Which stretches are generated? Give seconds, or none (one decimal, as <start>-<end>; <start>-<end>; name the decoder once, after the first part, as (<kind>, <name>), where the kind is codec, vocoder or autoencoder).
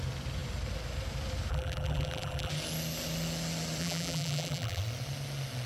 1.5-2.5 (vocoder, BigVGAN v2); 3.8-4.8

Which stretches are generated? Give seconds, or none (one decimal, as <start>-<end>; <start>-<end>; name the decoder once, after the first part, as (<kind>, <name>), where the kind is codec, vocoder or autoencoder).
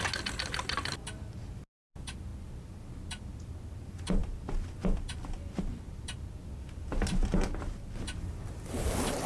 none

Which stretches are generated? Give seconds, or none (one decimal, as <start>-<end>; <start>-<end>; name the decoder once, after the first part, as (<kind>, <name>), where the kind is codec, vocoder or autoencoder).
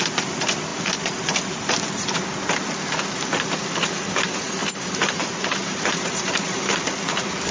4.6-6.8 (vocoder, BigVGAN v2)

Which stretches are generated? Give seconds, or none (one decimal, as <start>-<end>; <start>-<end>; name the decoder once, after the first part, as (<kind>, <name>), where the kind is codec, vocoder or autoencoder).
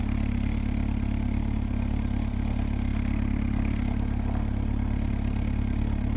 none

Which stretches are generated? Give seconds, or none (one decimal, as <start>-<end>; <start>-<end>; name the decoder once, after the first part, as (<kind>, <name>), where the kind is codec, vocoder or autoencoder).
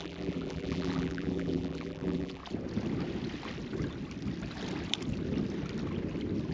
0.0-2.4 (vocoder, BigVGAN v2)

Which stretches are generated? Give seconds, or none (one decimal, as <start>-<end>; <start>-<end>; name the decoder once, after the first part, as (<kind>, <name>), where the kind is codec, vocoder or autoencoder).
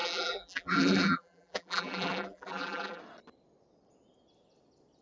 0.0-3.0 (vocoder, BigVGAN v2)